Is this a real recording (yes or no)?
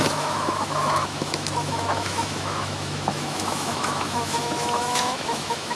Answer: no